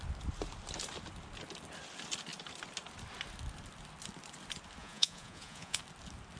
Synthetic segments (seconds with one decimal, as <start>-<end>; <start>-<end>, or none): 4.8-5.8